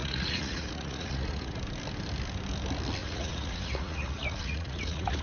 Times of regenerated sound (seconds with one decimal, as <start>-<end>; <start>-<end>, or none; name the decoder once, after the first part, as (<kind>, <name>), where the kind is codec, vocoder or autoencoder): 0.0-1.6 (vocoder, Vocos); 3.0-5.2